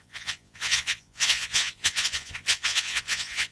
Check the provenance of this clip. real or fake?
fake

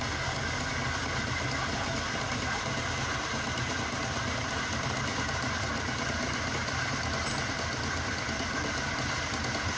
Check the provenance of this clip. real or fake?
real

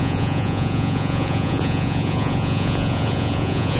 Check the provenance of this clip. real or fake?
fake